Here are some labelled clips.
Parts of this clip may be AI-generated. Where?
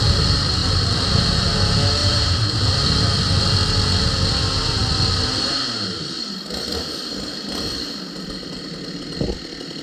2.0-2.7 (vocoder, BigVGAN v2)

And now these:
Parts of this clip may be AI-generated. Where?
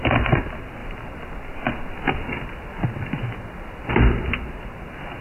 none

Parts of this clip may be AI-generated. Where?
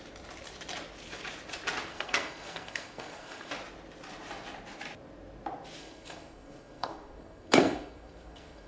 1.9-3.5 (codec, SNAC); 5.8-8.7